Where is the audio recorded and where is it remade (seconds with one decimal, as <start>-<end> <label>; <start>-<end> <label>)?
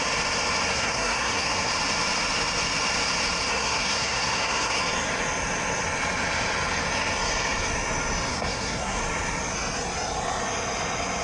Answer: 0.0-0.7 recorded; 0.7-1.7 remade; 1.7-3.5 recorded; 3.5-4.8 remade; 4.8-8.3 recorded; 8.3-9.0 remade; 9.0-11.2 recorded